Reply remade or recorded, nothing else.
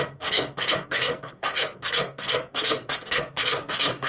remade